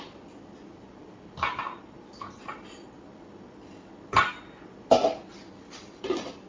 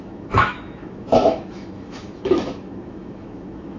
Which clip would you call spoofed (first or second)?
second